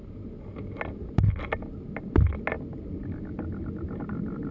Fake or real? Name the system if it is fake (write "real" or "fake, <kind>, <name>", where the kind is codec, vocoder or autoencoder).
real